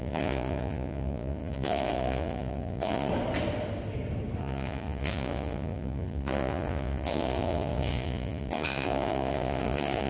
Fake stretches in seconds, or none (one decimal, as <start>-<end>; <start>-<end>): 0.0-3.1; 4.4-10.1